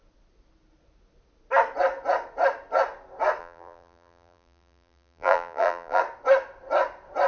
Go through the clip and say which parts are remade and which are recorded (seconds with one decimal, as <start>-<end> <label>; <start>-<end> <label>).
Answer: 0.0-3.4 recorded; 3.4-6.0 remade; 6.0-7.3 recorded